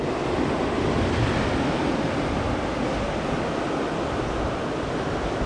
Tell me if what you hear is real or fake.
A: real